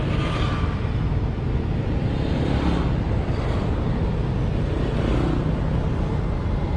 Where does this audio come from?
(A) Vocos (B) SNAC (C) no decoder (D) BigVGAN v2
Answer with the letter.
C